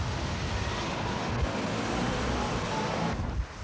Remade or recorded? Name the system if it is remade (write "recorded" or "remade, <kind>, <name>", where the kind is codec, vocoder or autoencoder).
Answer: recorded